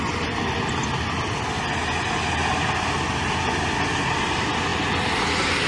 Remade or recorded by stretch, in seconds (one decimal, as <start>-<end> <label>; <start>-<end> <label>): 0.0-5.7 recorded